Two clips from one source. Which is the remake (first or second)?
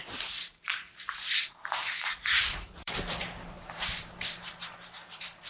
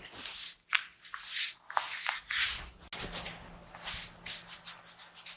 first